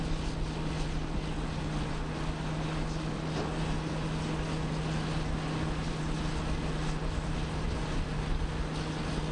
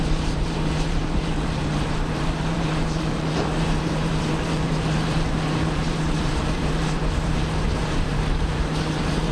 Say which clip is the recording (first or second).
first